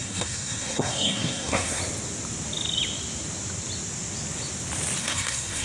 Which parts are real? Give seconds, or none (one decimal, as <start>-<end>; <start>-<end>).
1.8-5.0

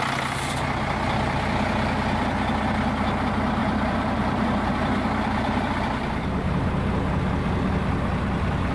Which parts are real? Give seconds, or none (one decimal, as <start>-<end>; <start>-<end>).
0.0-3.6; 4.7-8.7

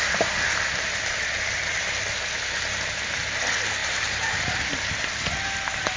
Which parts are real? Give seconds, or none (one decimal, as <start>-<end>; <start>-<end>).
0.0-3.8; 4.5-6.0